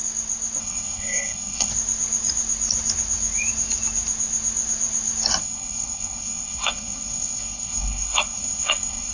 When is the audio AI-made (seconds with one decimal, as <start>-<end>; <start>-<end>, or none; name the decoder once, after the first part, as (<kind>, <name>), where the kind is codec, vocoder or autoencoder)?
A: 0.6-1.7 (codec, SNAC); 5.4-9.1